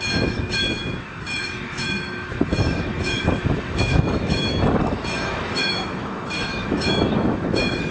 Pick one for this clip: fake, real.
fake